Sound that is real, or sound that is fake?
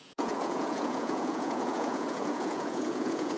fake